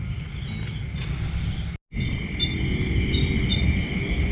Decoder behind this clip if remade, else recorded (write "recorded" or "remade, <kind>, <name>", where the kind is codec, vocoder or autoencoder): recorded